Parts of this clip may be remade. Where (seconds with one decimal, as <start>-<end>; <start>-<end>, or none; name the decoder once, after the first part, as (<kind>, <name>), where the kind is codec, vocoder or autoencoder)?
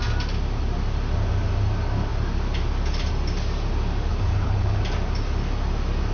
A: 4.1-4.8 (codec, HILCodec)